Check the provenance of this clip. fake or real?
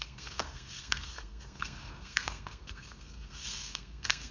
fake